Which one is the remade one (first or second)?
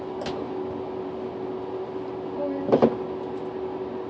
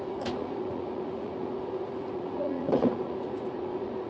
second